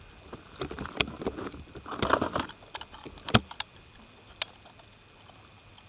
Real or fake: real